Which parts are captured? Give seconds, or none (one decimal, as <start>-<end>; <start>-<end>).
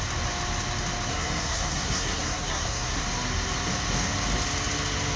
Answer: 0.0-1.1; 3.0-5.2